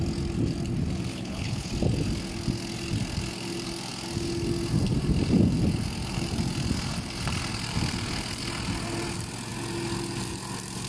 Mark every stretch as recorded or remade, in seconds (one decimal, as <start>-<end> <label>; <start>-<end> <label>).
0.0-1.1 recorded; 1.1-1.7 remade; 1.7-10.9 recorded